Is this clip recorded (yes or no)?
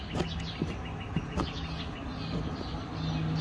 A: yes